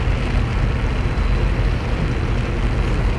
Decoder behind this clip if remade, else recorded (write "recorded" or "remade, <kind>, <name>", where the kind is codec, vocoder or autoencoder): recorded